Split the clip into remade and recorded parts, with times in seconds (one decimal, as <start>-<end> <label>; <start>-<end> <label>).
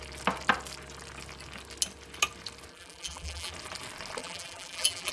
0.0-2.7 recorded; 2.7-3.5 remade; 3.5-4.2 recorded; 4.2-5.1 remade